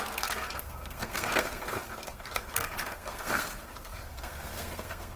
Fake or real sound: fake